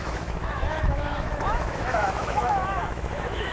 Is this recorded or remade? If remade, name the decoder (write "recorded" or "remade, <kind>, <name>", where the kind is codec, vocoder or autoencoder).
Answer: remade, autoencoder, DAC-VAE